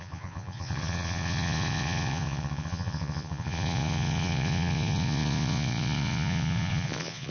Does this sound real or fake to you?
fake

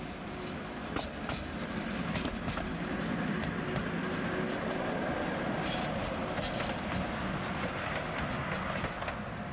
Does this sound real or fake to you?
real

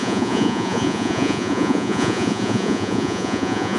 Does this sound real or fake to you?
fake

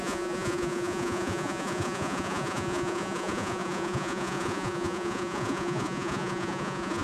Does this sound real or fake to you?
fake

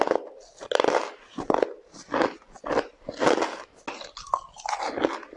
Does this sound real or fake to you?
real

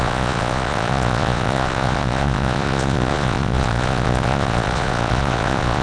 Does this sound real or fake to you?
fake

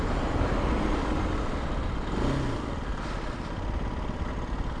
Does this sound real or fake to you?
real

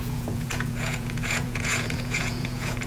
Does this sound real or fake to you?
fake